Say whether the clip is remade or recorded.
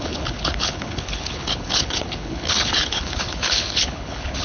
remade